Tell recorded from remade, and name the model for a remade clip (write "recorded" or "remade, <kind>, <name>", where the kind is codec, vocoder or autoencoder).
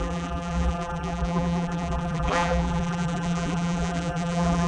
remade, vocoder, BigVGAN v2